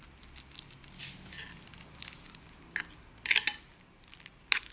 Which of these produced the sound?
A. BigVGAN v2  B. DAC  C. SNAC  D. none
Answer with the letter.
D